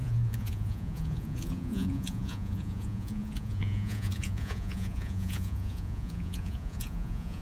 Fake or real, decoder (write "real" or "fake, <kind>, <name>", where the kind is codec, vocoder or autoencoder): fake, vocoder, Vocos